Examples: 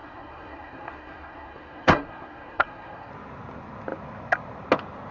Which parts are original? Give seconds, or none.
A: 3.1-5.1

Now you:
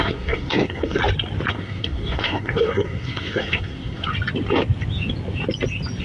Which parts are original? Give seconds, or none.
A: 1.0-1.5; 4.1-6.0

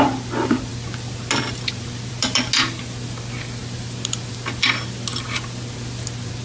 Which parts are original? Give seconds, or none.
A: 0.0-6.4

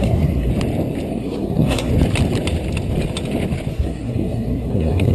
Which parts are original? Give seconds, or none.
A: 0.5-1.1; 1.9-3.7

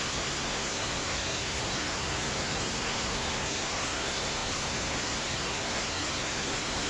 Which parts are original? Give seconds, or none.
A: none

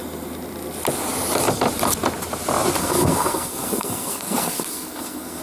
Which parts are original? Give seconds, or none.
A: 0.0-2.8

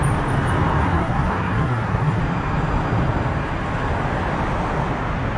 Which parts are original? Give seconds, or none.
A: 0.0-0.8; 2.2-5.4

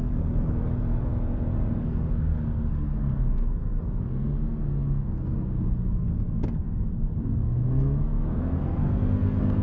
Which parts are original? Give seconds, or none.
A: 1.1-1.8